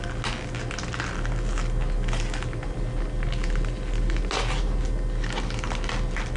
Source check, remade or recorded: recorded